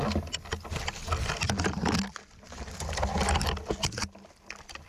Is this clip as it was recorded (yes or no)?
yes